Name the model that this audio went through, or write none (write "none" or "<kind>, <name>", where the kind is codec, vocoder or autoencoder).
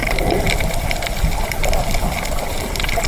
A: none